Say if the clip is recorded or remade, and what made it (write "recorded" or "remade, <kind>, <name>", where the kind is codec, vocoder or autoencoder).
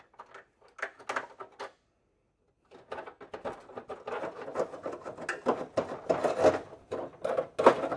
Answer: recorded